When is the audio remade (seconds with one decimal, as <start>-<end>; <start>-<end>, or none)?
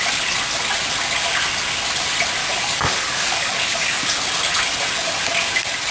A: 2.4-4.0